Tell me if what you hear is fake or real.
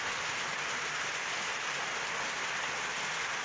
real